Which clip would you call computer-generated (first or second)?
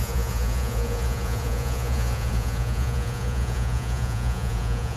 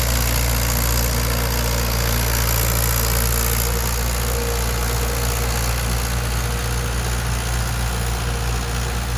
first